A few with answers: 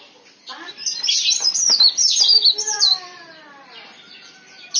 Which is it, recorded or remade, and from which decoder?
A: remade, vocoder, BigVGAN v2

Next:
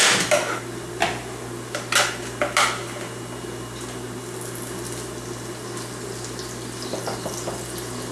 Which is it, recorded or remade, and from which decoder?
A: recorded